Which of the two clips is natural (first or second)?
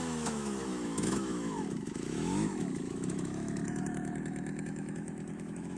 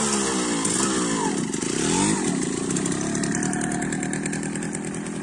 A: second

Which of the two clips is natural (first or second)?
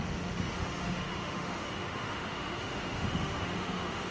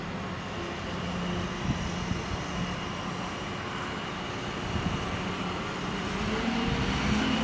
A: second